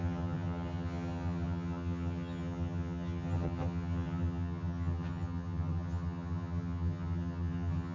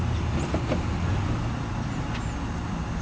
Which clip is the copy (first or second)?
first